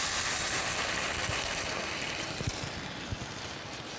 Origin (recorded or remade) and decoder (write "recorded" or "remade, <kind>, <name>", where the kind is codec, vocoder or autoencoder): recorded